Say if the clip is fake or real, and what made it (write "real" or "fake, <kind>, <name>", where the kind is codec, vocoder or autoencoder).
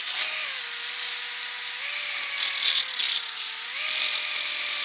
real